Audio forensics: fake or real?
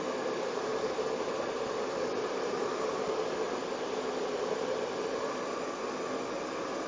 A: real